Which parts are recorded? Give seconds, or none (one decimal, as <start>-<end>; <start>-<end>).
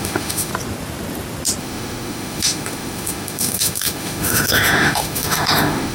0.5-1.6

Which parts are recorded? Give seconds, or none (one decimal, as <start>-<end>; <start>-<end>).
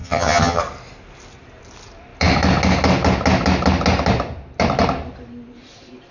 0.6-6.1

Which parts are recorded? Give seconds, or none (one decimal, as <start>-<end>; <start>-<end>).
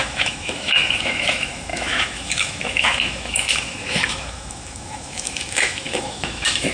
none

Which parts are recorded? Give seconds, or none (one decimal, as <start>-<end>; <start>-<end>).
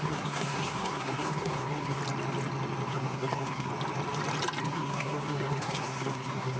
2.0-2.9; 3.7-4.6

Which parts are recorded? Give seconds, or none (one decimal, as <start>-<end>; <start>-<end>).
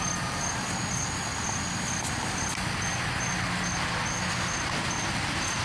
0.0-5.6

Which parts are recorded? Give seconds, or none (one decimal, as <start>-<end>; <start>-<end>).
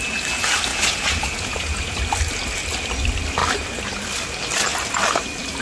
0.0-0.7; 2.0-5.6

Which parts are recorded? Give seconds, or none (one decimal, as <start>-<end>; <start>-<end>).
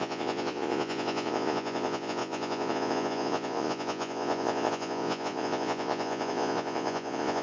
none